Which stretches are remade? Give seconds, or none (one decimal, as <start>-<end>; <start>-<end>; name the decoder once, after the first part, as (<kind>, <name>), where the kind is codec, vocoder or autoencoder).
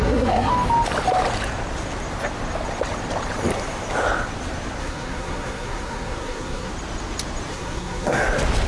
0.0-0.5 (codec, SNAC); 4.8-6.7; 7.5-8.2